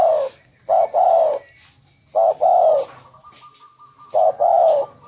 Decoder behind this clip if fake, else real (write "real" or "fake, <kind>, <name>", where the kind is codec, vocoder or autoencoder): real